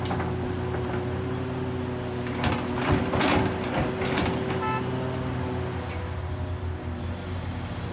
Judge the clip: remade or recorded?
recorded